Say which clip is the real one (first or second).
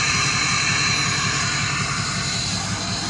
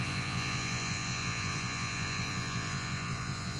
first